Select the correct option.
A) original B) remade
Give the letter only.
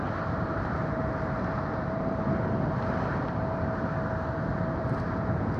B